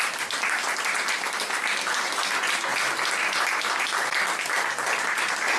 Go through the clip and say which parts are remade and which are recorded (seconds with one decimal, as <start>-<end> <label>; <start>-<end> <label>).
0.0-5.6 recorded